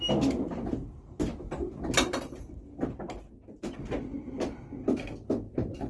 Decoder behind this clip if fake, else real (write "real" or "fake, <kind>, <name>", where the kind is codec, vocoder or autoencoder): real